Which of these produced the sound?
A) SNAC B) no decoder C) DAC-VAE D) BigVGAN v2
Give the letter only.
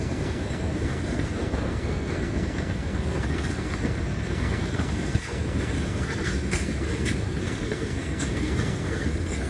A